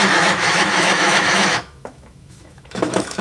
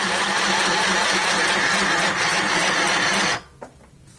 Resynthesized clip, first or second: first